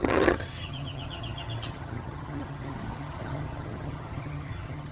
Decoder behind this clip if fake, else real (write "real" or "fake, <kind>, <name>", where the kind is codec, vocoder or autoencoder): fake, vocoder, HiFi-GAN